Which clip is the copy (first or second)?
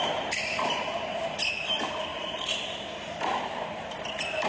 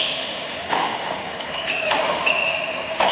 second